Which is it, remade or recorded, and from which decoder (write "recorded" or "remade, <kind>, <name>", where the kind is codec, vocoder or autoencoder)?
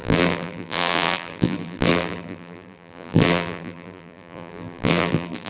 remade, vocoder, BigVGAN v2